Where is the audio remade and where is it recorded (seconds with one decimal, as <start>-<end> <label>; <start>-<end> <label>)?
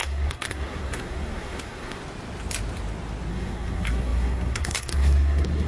0.0-2.0 remade; 2.0-3.3 recorded; 3.3-5.7 remade